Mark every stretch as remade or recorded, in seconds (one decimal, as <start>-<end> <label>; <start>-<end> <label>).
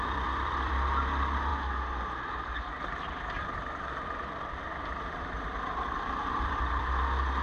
0.0-1.5 remade; 1.5-4.0 recorded; 4.0-7.4 remade